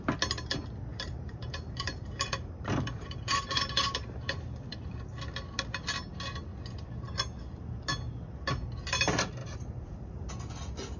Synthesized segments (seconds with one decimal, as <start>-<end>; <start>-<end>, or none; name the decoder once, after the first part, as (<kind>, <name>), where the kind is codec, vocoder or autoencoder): 0.9-4.9 (vocoder, BigVGAN v2); 9.4-10.3